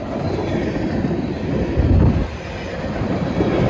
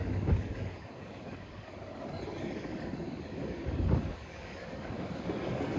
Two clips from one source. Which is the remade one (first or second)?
second